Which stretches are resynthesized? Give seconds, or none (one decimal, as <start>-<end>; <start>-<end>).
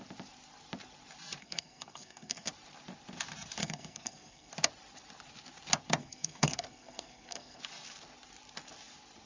1.4-2.5; 3.6-4.5; 6.0-7.6